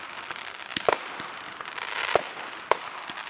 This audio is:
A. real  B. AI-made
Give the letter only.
A